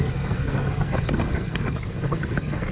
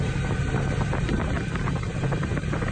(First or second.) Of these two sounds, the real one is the second